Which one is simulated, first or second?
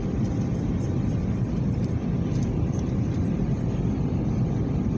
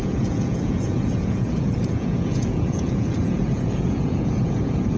second